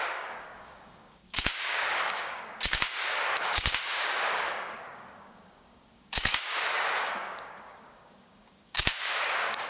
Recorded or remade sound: remade